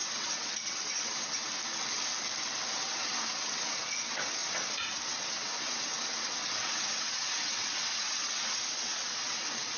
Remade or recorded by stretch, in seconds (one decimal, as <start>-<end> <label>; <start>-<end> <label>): 0.0-1.6 remade; 1.6-2.7 recorded; 2.7-9.8 remade